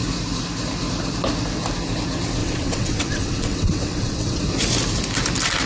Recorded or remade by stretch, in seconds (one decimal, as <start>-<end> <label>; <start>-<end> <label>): 0.0-2.4 recorded; 2.4-4.4 remade; 4.4-5.7 recorded